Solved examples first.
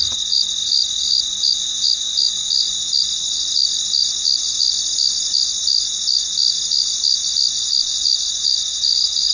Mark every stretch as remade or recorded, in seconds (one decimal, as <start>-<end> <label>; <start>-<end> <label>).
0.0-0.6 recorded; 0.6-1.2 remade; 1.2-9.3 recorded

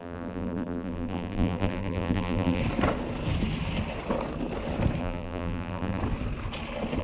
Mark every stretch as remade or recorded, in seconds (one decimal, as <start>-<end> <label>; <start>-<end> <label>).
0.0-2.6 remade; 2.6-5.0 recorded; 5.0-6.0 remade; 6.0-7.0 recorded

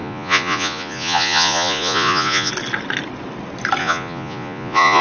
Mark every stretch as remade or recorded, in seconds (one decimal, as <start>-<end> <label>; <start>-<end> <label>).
0.0-2.5 remade; 2.5-3.8 recorded; 3.8-5.0 remade